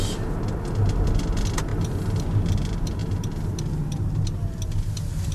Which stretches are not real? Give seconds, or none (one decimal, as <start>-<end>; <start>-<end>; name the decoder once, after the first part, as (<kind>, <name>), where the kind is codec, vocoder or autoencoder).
none